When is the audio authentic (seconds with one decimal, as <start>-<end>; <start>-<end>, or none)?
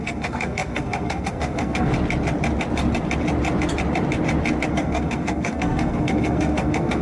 1.9-4.7